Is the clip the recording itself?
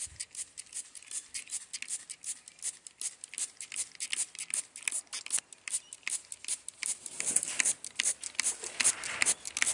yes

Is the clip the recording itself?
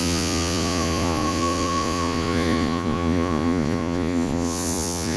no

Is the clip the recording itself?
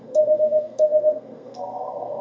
no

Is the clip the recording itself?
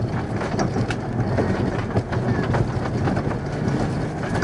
yes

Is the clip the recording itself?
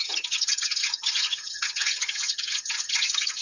no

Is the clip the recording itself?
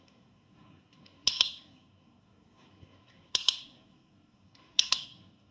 no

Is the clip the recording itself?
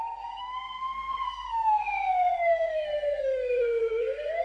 no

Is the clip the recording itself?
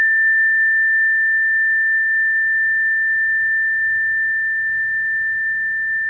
no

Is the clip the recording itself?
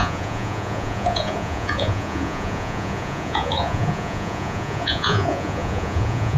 no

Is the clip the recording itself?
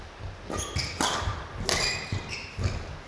yes